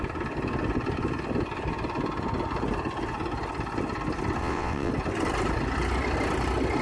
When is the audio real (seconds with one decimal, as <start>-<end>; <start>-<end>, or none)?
0.0-4.4; 4.9-6.8